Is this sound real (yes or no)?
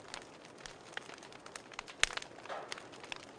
yes